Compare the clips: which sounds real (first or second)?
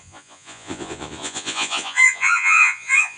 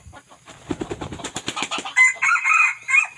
second